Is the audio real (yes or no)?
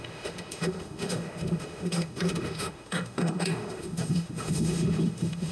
no